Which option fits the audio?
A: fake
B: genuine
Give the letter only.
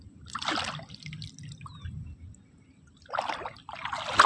B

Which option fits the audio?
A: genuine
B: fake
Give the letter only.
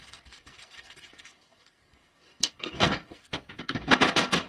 B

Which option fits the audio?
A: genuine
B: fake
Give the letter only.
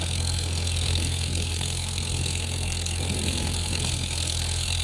B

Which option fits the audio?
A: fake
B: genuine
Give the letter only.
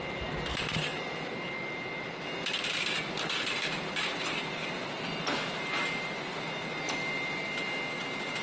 B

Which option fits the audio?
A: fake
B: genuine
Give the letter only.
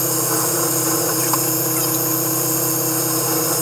B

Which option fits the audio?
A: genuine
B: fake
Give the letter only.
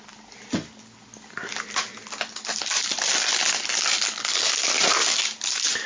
A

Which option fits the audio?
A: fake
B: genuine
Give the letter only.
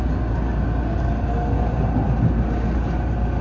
B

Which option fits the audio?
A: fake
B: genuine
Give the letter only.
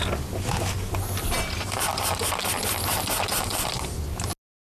B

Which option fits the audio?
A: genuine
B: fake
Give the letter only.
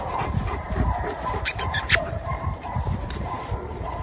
B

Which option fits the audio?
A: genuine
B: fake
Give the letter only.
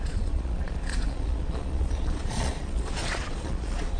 B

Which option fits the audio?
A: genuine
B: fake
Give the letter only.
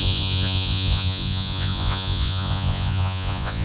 B